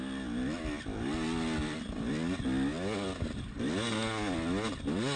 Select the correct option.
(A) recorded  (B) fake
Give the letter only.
A